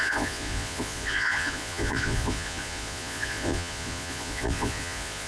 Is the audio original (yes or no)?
no